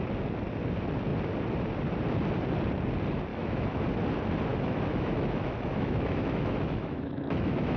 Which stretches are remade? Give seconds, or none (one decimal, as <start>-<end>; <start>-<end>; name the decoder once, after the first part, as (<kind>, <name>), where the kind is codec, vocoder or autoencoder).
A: 3.3-3.8 (autoencoder, DAC-VAE); 4.5-7.8